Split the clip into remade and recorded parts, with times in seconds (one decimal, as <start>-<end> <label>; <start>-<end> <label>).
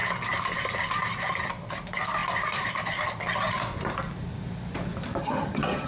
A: 0.0-5.2 recorded; 5.2-5.9 remade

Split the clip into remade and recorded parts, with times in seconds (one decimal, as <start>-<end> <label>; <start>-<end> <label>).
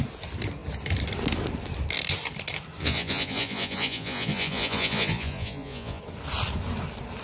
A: 0.0-2.8 recorded; 2.8-6.0 remade; 6.0-7.2 recorded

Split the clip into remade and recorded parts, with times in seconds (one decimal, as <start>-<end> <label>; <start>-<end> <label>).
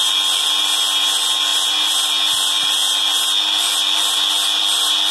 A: 0.0-5.1 recorded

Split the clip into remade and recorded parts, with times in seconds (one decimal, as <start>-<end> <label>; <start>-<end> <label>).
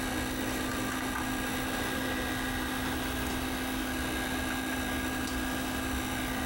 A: 0.0-6.5 recorded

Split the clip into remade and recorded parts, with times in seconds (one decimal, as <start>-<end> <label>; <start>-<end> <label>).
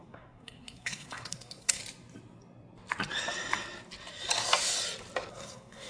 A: 0.0-1.8 remade; 1.8-5.3 recorded; 5.3-5.9 remade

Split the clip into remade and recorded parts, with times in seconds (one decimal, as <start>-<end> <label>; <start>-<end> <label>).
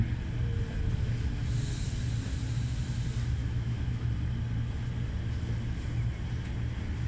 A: 0.0-3.4 recorded; 3.4-4.1 remade; 4.1-7.1 recorded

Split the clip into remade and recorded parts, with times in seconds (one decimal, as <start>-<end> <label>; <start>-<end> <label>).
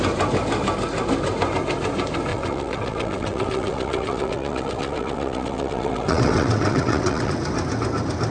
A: 0.0-2.3 recorded; 2.3-7.3 remade; 7.3-8.3 recorded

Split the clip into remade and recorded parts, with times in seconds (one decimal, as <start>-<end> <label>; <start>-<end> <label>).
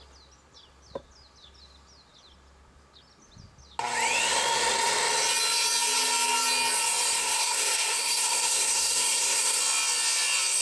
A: 0.0-7.2 recorded; 7.2-9.6 remade; 9.6-10.6 recorded